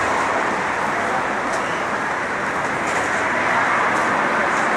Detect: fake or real real